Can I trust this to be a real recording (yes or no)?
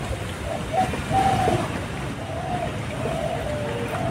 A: yes